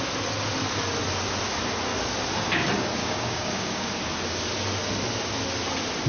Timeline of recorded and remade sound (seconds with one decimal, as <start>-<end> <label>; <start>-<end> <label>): 0.0-3.0 recorded; 3.0-3.9 remade; 3.9-6.1 recorded